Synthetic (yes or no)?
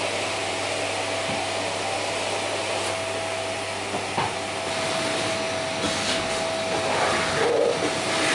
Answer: no